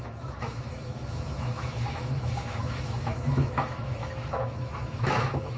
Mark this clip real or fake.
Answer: fake